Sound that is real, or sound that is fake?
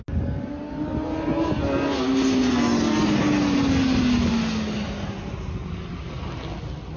real